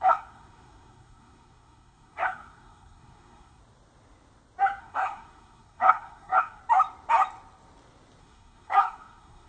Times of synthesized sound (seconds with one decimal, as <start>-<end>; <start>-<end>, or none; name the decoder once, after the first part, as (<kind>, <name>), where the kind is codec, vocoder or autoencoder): 0.0-3.6 (codec, SNAC); 4.8-6.6; 8.2-9.5